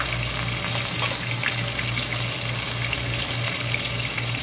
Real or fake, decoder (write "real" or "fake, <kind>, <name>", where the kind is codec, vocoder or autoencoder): real